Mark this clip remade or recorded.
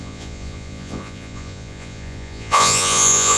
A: remade